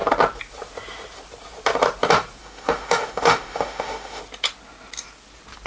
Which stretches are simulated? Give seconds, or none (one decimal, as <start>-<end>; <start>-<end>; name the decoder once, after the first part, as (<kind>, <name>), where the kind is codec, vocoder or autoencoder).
2.4-4.2 (autoencoder, DAC-VAE)